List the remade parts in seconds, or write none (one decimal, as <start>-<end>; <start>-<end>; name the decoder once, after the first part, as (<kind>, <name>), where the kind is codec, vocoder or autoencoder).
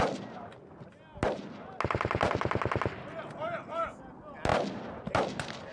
none